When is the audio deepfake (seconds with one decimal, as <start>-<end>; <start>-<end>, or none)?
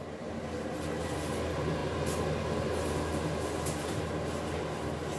none